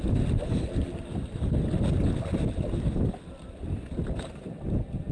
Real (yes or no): yes